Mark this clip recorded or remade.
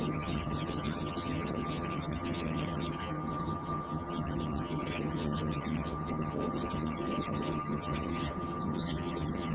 remade